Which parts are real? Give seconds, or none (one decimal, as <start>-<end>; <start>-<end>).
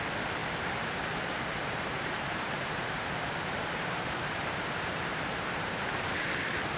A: 0.0-1.6; 5.7-6.8